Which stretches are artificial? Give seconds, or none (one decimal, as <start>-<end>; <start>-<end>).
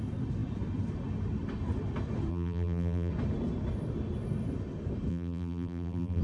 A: 2.3-3.1; 5.1-6.2